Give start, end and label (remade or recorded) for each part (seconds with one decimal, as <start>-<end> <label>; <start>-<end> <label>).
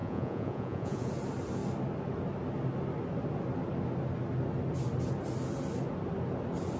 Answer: 0.0-1.1 remade; 1.1-6.8 recorded